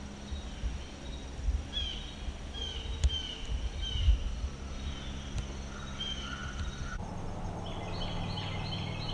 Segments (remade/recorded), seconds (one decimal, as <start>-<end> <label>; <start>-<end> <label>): 0.0-9.1 recorded